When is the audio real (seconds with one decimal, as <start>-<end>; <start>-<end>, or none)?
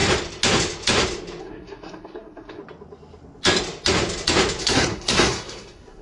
0.0-1.4; 2.6-4.6